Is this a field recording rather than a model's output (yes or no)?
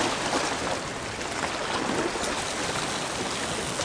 yes